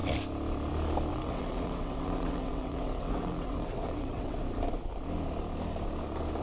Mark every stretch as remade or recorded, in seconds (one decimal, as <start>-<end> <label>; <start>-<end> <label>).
0.0-1.1 recorded; 1.1-4.4 remade; 4.4-6.4 recorded